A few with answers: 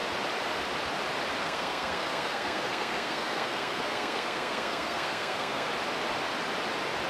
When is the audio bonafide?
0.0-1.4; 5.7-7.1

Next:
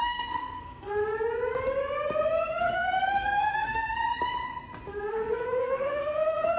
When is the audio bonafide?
1.0-2.6; 4.0-5.1

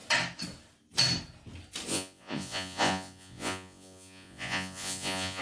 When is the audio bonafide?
0.0-1.9

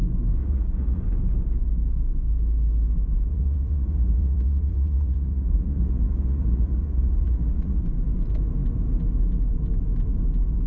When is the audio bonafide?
0.0-0.4; 1.0-3.3; 7.8-10.7

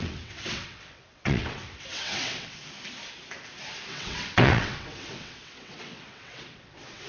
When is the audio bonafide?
2.6-3.9

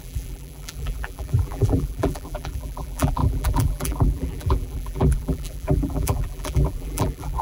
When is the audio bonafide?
none

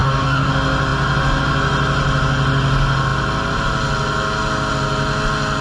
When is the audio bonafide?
0.5-5.6

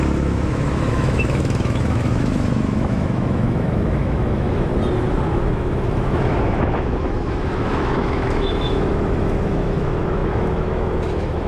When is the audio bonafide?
4.7-5.3